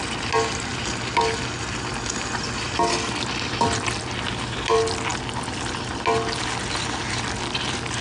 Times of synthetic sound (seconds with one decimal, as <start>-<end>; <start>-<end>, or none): none